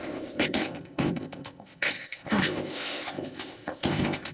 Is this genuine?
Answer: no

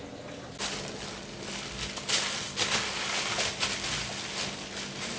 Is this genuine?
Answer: yes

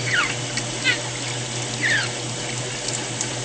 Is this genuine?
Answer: yes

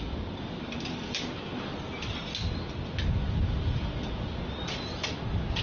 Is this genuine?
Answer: yes